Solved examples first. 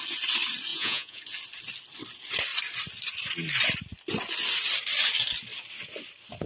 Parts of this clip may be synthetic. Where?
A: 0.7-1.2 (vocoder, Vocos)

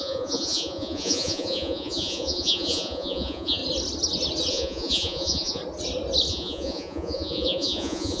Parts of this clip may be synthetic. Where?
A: 0.0-3.6 (vocoder, Vocos); 4.5-5.6; 6.3-8.2

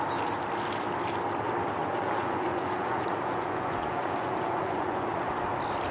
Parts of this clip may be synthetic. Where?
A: 1.8-5.3 (vocoder, Vocos)